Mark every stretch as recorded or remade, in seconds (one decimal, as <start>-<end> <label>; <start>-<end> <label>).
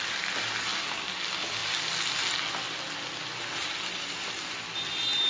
0.0-5.3 recorded